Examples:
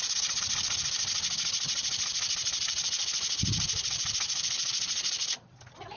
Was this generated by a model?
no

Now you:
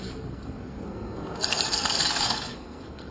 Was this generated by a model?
yes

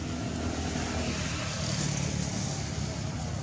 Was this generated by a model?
no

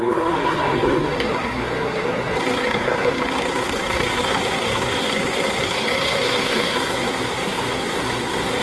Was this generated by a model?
yes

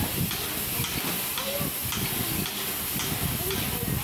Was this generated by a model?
no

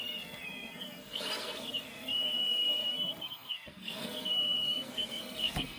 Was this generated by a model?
yes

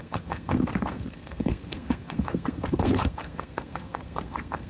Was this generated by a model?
yes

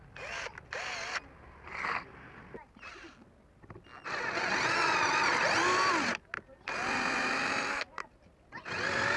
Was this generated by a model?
no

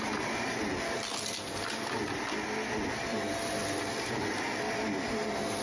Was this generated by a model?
no